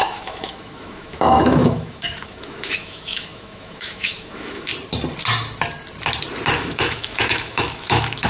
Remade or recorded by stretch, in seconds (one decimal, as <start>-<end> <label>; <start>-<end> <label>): 0.0-4.7 remade; 4.7-6.6 recorded; 6.6-8.3 remade